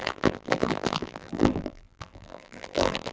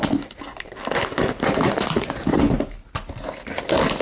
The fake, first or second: first